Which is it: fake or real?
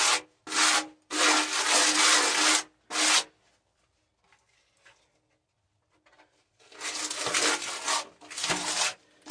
real